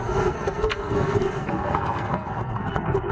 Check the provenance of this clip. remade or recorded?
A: remade